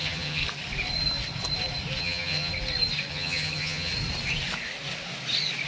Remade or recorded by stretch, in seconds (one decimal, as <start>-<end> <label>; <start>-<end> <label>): 0.0-0.4 remade; 0.4-2.0 recorded; 2.0-2.5 remade; 2.5-3.1 recorded; 3.1-3.9 remade; 3.9-5.7 recorded

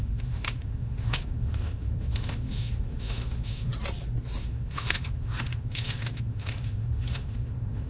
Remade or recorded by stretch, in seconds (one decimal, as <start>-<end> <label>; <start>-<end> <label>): 0.0-3.7 remade; 3.7-4.4 recorded; 4.4-7.9 remade

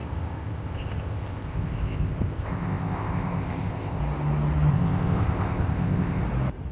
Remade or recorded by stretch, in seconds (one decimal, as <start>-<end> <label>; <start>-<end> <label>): 0.0-4.0 remade; 4.0-4.7 recorded; 4.7-6.2 remade; 6.2-6.7 recorded

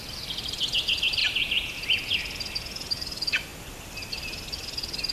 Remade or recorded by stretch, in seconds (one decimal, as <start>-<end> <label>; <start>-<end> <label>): 0.0-5.1 recorded

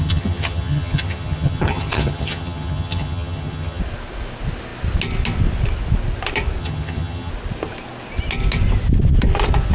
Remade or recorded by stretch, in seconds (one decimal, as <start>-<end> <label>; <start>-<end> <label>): 0.0-3.8 remade; 3.8-6.6 recorded; 6.6-7.3 remade; 7.3-9.7 recorded

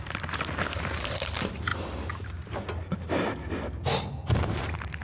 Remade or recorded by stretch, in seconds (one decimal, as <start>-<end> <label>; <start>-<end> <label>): 0.0-1.7 remade; 1.7-4.1 recorded; 4.1-5.0 remade